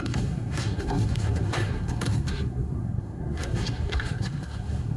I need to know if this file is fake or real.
fake